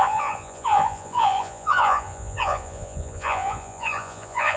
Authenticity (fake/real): fake